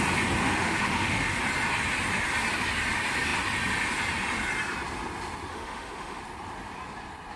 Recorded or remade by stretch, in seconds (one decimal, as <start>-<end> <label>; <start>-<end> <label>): 0.0-0.4 recorded; 0.4-1.4 remade; 1.4-5.5 recorded; 5.5-6.2 remade; 6.2-7.4 recorded